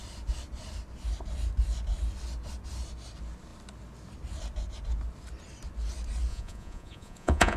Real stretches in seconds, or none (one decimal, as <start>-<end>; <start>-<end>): 0.0-6.3